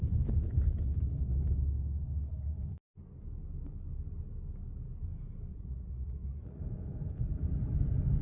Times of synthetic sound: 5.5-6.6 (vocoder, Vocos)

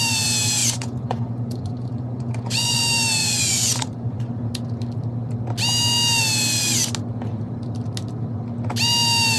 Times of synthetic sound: 0.6-2.8 (vocoder, Vocos); 3.2-4.3